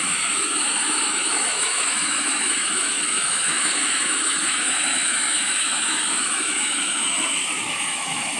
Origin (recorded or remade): remade